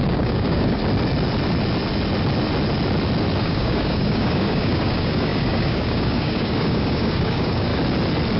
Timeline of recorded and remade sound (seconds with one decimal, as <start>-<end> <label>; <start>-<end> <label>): 0.0-0.8 remade; 0.8-3.4 recorded; 3.4-7.7 remade; 7.7-8.4 recorded